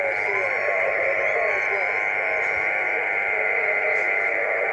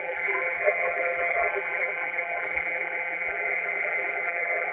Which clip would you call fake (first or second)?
second